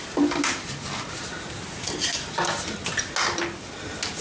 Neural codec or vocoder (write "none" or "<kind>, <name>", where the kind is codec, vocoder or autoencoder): none